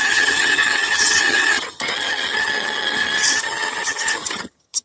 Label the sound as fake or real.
fake